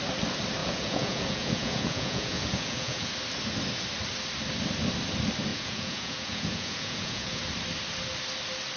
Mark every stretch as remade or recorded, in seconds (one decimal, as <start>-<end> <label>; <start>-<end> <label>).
0.0-0.6 recorded; 0.6-3.1 remade; 3.1-5.5 recorded; 5.5-7.4 remade; 7.4-8.8 recorded